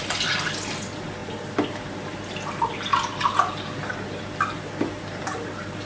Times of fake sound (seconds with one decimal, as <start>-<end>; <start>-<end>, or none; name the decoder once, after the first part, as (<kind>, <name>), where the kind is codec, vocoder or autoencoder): none